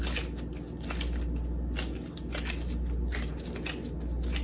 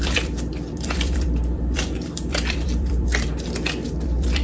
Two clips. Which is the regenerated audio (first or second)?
second